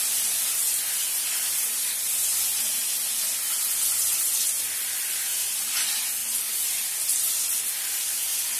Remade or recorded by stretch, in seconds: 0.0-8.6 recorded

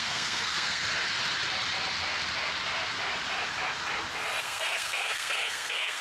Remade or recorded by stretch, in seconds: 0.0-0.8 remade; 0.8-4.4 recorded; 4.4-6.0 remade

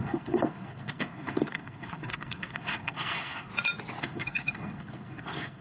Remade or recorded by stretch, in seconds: 0.0-3.5 remade; 3.5-4.0 recorded; 4.0-5.6 remade